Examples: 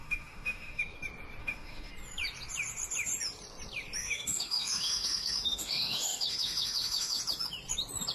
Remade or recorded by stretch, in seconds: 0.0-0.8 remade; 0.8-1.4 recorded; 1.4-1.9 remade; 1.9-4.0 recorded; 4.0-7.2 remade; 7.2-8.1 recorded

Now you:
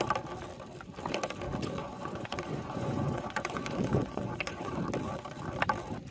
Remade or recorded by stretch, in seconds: 0.0-1.8 recorded; 1.8-4.8 remade; 4.8-6.1 recorded